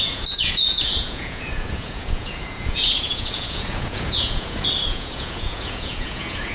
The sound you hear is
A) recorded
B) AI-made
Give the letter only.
B